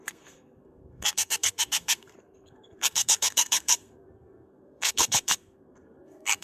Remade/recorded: remade